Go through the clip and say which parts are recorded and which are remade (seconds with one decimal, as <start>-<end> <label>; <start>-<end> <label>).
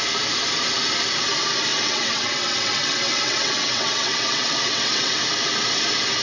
0.0-1.7 recorded; 1.7-5.2 remade; 5.2-6.2 recorded